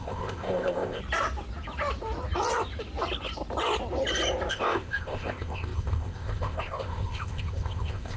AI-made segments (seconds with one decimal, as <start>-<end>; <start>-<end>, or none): 0.0-1.0; 4.5-8.2